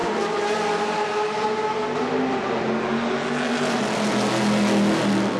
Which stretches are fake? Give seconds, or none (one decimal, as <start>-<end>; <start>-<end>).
none

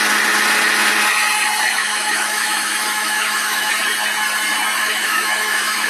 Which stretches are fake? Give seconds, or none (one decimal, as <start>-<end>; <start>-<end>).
1.8-3.7; 4.8-5.9

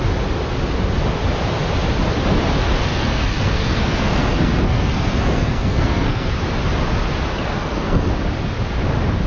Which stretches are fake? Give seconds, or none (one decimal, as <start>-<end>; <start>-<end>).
2.9-6.3; 7.3-8.1

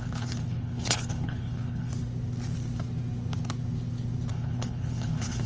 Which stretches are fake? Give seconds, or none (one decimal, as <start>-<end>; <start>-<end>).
0.0-1.9; 4.3-5.5